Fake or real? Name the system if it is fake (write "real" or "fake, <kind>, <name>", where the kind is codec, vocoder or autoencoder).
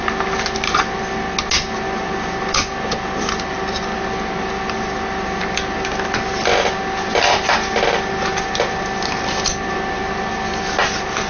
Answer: real